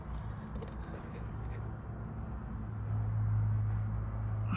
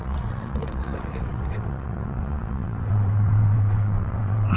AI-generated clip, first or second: second